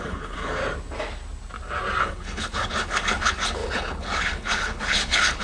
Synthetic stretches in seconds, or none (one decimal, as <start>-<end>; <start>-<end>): 0.0-0.6; 2.0-5.4